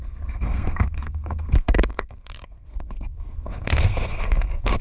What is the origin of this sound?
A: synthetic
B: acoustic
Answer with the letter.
A